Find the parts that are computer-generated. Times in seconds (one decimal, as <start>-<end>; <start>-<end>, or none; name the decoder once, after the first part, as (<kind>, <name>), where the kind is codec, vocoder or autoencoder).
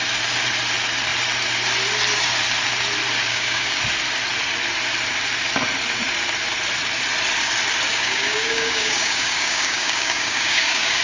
3.3-3.8 (codec, DAC); 7.9-11.0